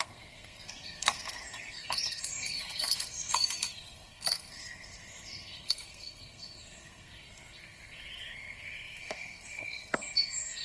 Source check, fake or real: fake